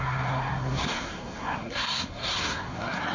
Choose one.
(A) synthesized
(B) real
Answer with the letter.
A